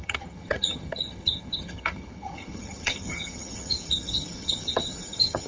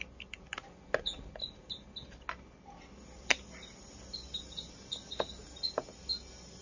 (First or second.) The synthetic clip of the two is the first